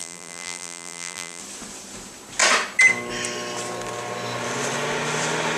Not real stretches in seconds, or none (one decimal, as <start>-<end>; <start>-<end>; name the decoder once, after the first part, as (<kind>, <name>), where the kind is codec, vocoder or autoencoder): 0.0-1.4 (vocoder, BigVGAN v2)